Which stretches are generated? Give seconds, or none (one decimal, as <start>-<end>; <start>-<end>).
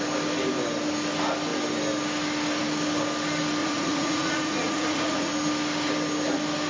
3.6-5.3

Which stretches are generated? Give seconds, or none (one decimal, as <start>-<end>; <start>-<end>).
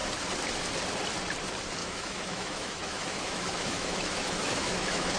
1.8-5.2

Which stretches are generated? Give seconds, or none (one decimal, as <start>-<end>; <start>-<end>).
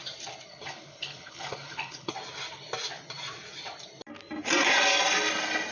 0.5-2.1